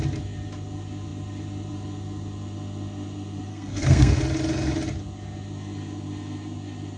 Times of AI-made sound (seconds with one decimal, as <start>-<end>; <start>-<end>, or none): 3.5-4.2